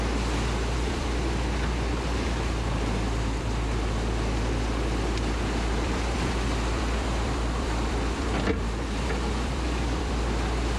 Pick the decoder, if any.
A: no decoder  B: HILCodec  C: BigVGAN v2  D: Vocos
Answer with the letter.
C